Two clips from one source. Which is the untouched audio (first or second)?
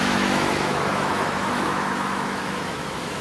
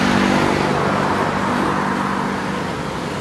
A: second